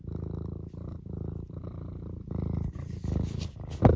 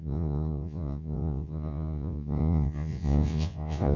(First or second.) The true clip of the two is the first